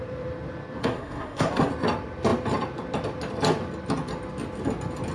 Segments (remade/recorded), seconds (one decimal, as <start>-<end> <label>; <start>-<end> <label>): 0.0-0.8 recorded; 0.8-1.7 remade; 1.7-5.1 recorded